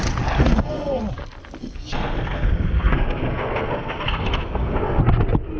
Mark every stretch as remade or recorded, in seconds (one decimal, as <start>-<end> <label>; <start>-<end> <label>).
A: 0.0-0.4 recorded; 0.4-1.0 remade; 1.0-1.6 recorded; 1.6-5.0 remade; 5.0-5.6 recorded